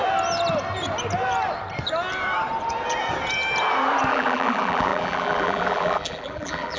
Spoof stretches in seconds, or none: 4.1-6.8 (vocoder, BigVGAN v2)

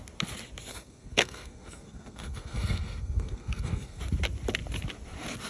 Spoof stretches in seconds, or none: 0.7-4.0 (codec, SNAC)

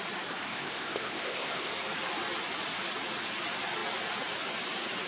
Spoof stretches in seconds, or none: 0.4-1.7 (codec, ZipCodec)

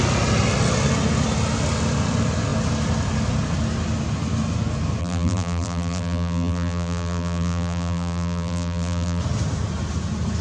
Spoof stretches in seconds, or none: 5.0-9.2 (vocoder, BigVGAN v2)

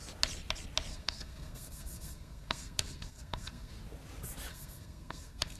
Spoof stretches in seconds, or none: 0.9-3.7 (codec, SNAC); 4.5-5.6